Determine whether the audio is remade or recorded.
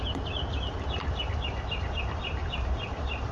remade